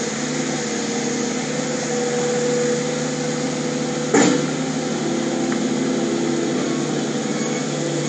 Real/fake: real